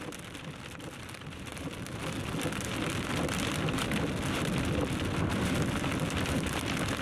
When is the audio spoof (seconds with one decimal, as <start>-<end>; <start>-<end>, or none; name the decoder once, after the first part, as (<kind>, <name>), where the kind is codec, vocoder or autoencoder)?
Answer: 0.0-7.0 (vocoder, BigVGAN v2)